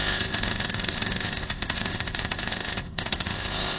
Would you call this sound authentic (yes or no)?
no